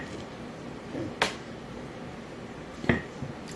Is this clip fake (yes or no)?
no